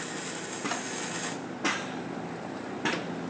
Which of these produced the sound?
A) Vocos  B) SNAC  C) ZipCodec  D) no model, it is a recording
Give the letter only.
D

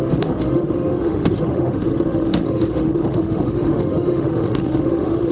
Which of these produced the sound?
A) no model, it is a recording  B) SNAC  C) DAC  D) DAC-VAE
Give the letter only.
D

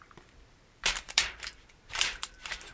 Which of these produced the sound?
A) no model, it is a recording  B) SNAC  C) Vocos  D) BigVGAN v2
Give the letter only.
D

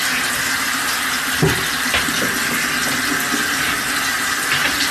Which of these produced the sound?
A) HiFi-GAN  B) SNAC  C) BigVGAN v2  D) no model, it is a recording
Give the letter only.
D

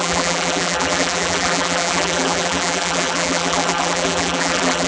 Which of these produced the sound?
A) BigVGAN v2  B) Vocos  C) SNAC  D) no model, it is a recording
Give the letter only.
A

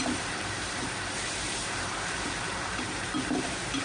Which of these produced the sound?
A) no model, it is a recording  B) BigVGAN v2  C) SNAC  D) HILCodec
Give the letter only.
B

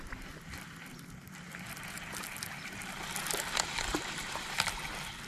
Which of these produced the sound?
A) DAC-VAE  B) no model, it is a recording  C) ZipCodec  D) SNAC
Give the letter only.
B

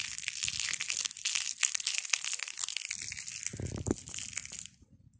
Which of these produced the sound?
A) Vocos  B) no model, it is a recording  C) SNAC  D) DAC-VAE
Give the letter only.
B